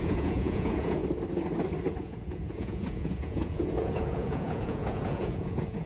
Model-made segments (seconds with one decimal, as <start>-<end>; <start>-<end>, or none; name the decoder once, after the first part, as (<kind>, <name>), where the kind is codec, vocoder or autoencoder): 0.0-1.0 (vocoder, Vocos); 2.0-5.9

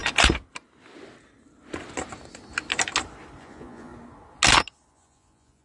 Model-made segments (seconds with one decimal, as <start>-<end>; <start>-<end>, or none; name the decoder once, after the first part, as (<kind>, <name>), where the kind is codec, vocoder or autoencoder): 3.4-3.9 (vocoder, Vocos); 4.9-5.6

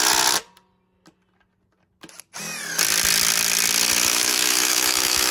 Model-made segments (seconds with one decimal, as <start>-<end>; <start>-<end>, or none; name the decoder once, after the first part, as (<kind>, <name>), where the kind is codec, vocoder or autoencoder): 4.1-5.3 (autoencoder, DAC-VAE)

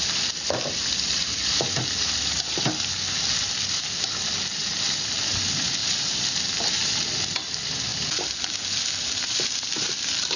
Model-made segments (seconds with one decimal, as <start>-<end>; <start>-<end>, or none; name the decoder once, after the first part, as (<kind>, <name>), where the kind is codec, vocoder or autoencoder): 0.0-5.8 (vocoder, BigVGAN v2); 6.8-10.4

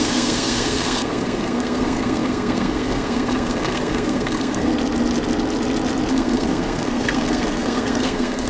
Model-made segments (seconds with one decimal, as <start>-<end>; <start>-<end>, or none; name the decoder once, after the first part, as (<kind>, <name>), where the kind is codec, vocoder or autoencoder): 0.0-4.7 (codec, SNAC); 6.1-8.5

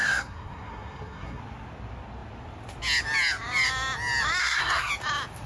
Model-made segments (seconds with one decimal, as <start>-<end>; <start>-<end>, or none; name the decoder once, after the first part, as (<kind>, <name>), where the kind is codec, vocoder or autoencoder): 0.0-1.4 (codec, SNAC); 4.4-4.9

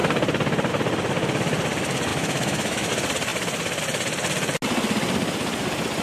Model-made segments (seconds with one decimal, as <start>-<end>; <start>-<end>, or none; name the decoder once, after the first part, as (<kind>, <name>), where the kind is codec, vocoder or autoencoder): 2.1-2.9 (autoencoder, DAC-VAE)

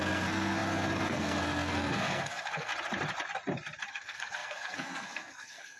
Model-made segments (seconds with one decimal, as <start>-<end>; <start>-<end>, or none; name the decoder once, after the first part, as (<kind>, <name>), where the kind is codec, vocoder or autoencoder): 0.0-2.7 (codec, SNAC); 3.9-5.8